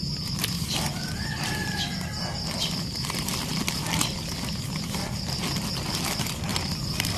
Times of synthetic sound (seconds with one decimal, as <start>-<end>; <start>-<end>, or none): 6.5-7.2